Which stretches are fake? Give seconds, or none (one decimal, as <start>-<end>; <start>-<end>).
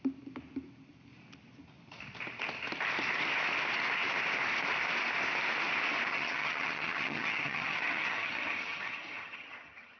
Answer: 6.1-10.0